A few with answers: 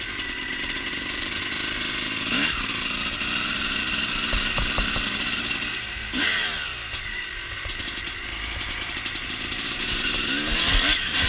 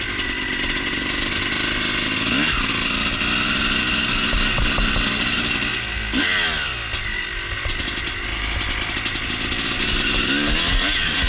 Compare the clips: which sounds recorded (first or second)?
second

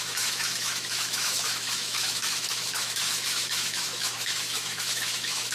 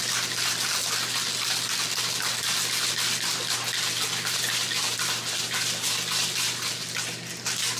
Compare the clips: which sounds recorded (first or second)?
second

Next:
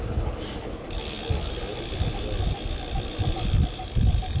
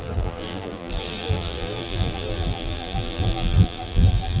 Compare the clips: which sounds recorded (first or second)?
first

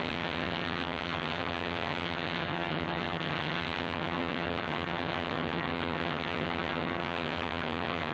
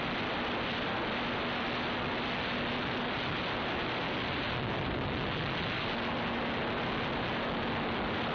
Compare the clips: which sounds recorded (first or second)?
second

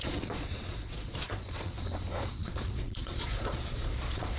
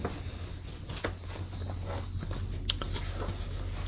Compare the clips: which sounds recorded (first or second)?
second